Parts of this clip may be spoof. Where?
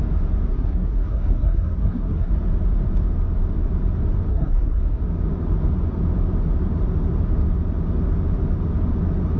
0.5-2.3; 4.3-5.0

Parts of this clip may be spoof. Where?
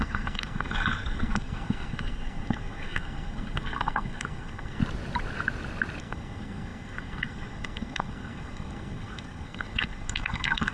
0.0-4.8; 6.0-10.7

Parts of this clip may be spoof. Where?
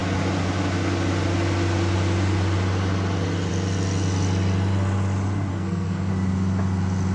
5.5-6.1